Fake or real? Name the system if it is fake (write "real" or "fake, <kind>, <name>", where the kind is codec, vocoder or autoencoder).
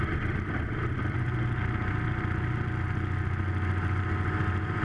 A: real